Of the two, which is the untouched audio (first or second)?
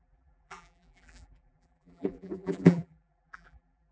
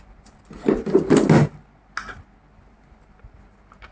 second